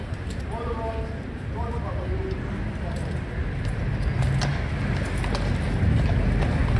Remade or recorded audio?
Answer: recorded